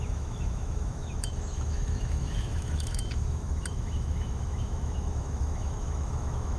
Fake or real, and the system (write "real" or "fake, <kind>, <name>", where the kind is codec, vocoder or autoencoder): fake, autoencoder, DAC-VAE